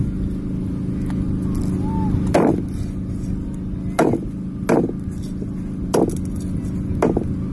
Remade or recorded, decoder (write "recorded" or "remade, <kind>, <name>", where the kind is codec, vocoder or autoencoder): recorded